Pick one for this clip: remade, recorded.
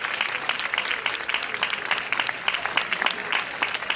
recorded